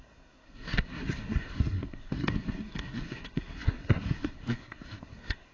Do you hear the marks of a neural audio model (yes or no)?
yes